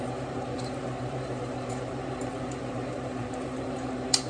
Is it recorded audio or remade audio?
remade